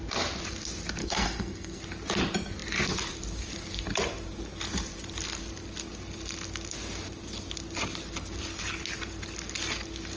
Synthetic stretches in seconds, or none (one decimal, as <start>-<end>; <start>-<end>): 1.0-1.8